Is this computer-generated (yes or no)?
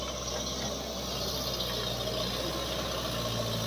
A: no